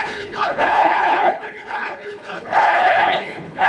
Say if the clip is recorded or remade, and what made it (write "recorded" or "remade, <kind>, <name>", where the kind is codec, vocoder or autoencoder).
remade, codec, HILCodec